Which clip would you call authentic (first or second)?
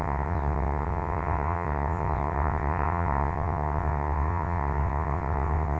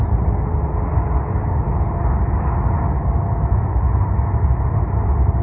second